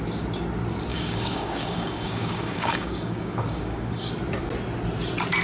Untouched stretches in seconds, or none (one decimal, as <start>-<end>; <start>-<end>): 0.0-0.9; 4.1-5.4